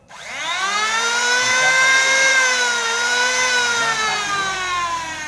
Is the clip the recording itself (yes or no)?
no